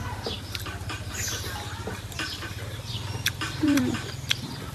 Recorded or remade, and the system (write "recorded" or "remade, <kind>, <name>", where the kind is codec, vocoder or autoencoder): remade, vocoder, BigVGAN v2